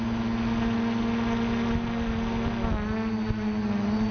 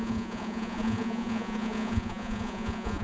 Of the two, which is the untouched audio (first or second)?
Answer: first